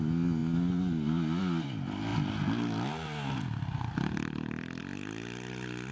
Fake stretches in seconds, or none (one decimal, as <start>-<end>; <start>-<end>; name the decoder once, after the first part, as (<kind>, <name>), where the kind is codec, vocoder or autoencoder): none